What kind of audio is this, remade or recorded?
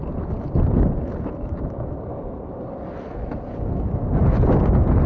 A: recorded